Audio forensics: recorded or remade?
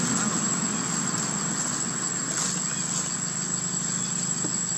recorded